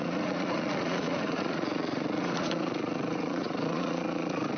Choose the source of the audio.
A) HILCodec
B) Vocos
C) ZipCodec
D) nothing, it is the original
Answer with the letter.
B